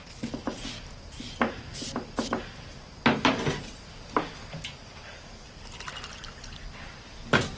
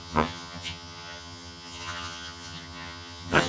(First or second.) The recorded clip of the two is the first